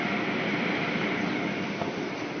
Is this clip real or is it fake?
real